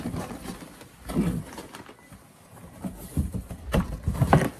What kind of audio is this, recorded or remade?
recorded